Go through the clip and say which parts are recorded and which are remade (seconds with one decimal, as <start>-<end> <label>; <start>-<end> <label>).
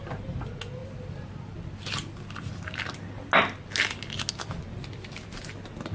0.0-5.9 recorded